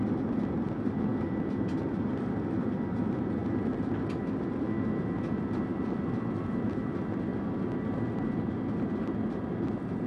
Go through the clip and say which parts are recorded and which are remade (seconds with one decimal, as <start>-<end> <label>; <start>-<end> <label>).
0.0-10.1 recorded

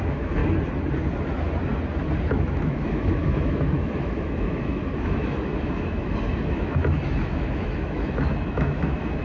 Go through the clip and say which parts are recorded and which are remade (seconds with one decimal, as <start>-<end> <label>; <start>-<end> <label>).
0.0-0.4 remade; 0.4-2.2 recorded; 2.2-9.2 remade